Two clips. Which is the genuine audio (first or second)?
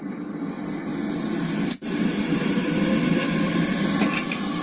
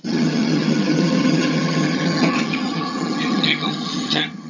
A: first